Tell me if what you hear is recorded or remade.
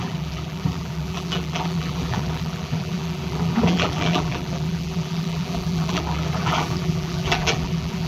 remade